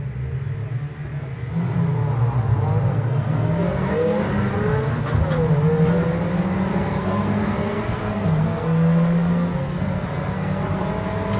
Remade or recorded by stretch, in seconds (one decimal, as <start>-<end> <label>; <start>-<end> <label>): 0.0-2.9 recorded; 2.9-4.3 remade; 4.3-6.7 recorded; 6.7-10.8 remade; 10.8-11.4 recorded